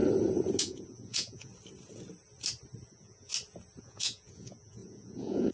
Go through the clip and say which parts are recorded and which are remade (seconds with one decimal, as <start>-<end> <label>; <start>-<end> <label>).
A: 0.0-0.6 recorded; 0.6-1.5 remade; 1.5-2.9 recorded; 2.9-3.3 remade; 3.3-3.8 recorded; 3.8-5.5 remade